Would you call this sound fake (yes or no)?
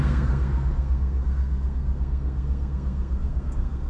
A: yes